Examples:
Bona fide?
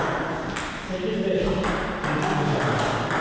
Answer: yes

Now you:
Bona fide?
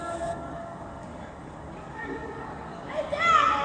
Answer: no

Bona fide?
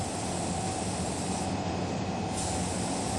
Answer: yes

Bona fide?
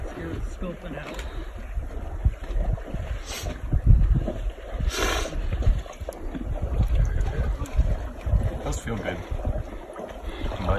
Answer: yes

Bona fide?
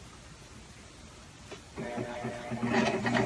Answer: yes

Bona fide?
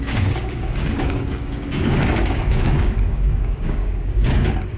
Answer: no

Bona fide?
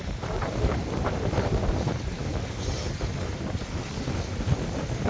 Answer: yes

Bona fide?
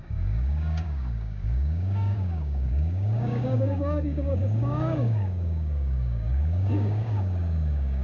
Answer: no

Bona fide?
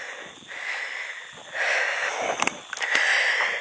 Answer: yes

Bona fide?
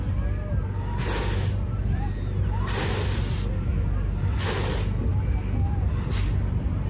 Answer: yes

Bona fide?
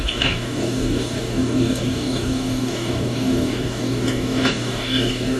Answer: no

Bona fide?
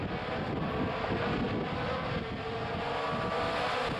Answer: yes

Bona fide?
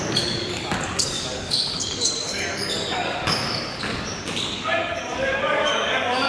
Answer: no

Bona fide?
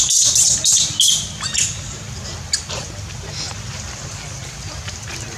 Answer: yes